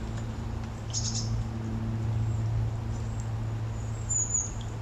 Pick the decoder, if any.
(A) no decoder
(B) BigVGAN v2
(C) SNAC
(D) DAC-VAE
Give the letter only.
A